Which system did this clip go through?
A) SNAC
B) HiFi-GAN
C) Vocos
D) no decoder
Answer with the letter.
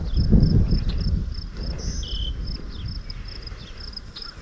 D